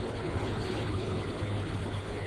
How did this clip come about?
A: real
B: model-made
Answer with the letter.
B